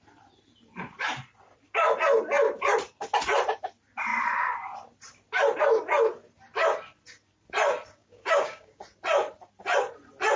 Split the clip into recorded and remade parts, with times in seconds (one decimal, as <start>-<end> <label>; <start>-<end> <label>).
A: 0.0-8.0 recorded; 8.0-8.8 remade; 8.8-10.4 recorded